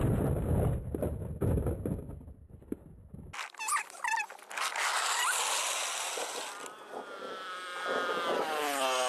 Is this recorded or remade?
recorded